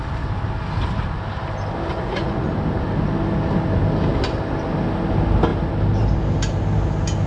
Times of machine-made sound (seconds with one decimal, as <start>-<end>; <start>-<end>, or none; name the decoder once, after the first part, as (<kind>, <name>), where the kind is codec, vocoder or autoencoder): 1.9-2.5 (vocoder, Vocos)